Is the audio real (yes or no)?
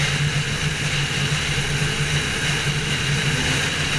yes